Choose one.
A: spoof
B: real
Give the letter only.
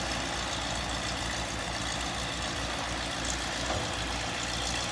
B